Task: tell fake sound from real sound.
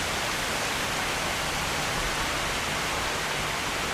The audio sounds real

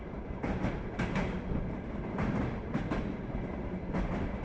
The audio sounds real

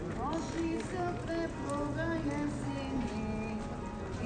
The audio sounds real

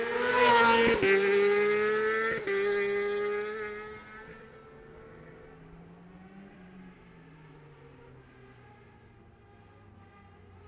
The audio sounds real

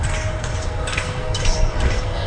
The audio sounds fake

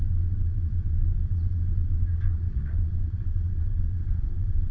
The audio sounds fake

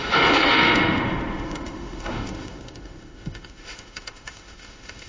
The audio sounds fake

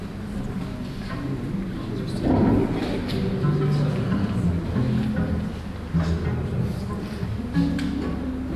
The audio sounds real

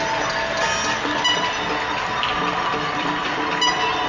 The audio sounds real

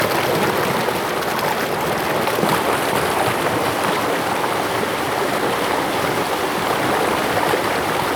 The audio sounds real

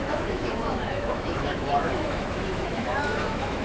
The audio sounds fake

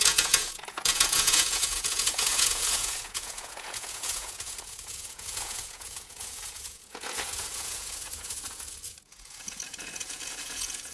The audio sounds fake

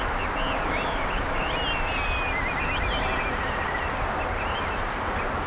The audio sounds real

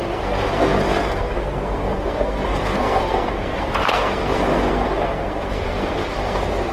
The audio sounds fake